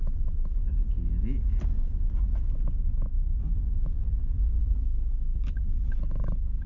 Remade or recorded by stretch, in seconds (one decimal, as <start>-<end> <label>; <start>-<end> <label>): 0.0-0.6 remade; 0.6-4.6 recorded; 4.6-6.7 remade